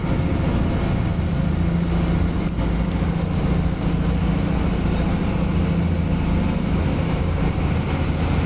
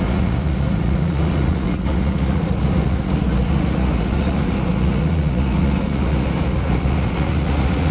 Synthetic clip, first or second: second